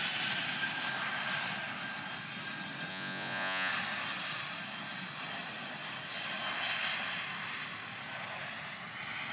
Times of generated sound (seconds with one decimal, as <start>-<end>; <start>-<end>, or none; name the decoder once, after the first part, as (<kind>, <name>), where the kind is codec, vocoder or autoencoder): 2.9-3.7 (vocoder, Vocos)